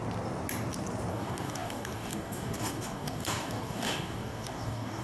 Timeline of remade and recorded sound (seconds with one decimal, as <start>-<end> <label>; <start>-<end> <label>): 0.0-1.1 recorded; 1.1-5.0 remade